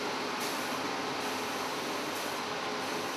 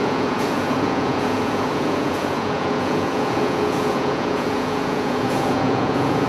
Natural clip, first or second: first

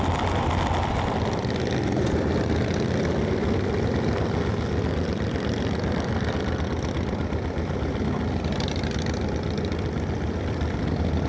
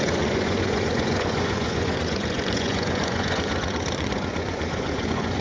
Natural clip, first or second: first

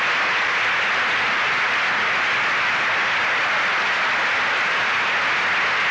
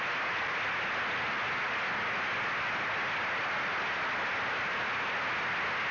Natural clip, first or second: second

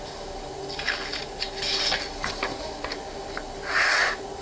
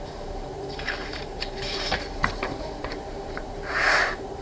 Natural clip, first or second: first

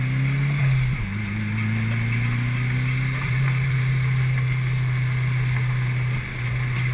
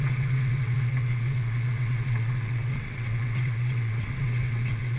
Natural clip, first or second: first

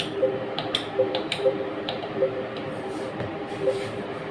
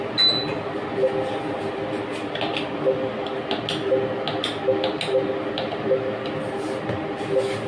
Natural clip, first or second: second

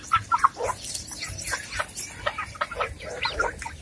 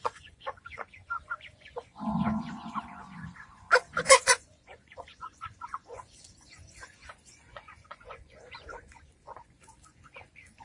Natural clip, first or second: first